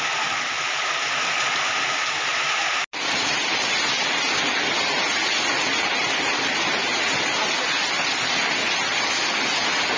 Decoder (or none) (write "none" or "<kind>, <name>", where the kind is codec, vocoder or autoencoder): none